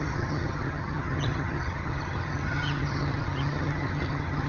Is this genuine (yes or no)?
no